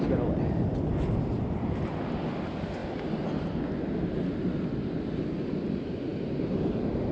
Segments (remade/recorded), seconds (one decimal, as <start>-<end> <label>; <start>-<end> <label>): 0.0-7.1 recorded